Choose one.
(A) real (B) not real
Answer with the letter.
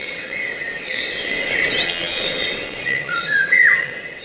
B